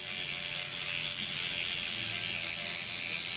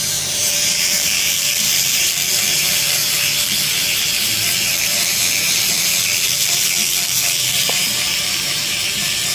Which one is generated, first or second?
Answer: second